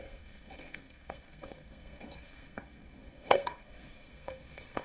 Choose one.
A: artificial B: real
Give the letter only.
A